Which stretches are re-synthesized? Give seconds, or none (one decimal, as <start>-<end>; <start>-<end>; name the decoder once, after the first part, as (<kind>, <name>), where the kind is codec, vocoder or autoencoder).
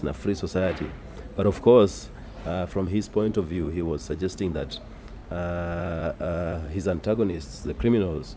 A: 0.0-5.2 (vocoder, Vocos); 5.8-8.4